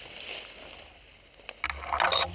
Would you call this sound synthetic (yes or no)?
no